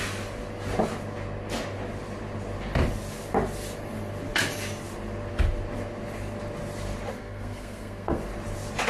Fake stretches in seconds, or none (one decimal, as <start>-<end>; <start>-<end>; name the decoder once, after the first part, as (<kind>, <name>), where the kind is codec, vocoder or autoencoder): 7.1-8.2 (codec, SNAC)